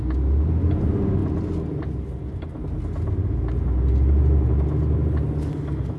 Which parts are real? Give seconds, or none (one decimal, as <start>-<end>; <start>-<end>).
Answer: 0.0-6.0